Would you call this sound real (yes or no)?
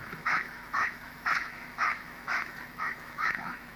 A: no